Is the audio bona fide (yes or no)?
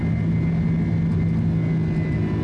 yes